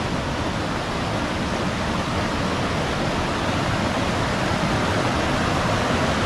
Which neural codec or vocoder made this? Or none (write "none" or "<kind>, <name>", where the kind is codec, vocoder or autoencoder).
none